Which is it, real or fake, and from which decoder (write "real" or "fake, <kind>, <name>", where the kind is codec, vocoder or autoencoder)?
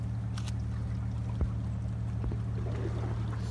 real